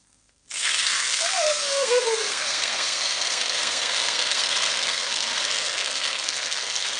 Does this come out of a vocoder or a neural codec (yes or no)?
yes